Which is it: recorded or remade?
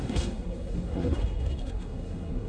remade